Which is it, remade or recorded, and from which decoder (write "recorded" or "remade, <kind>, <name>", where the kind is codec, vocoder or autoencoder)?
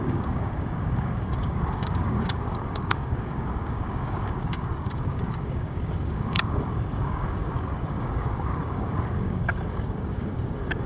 remade, codec, DAC